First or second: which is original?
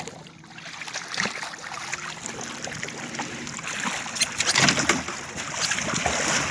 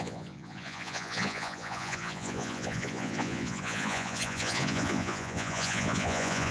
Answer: first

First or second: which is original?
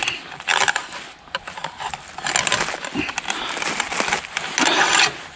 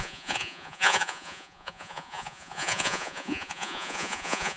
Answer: first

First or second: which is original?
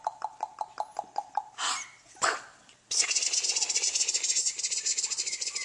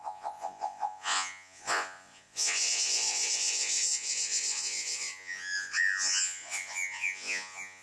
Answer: first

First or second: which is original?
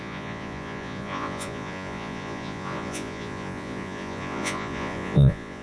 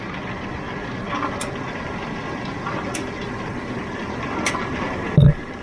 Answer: second